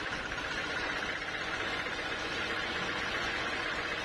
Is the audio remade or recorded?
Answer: remade